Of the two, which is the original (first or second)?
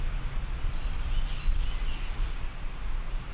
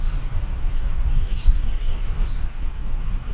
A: first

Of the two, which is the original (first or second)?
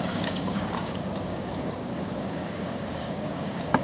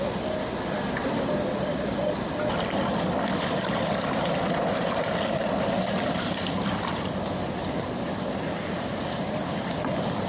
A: second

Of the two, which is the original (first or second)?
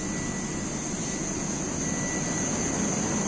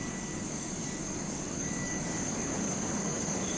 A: first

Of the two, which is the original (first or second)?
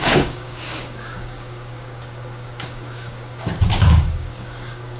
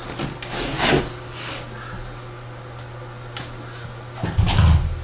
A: second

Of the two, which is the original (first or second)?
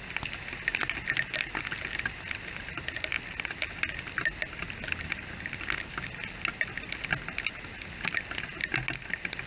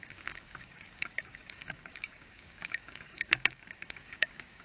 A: first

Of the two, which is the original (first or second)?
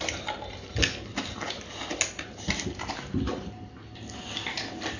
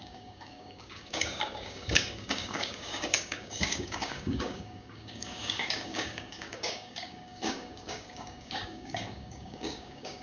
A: first